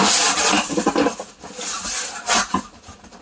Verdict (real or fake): real